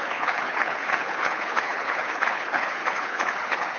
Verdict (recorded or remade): remade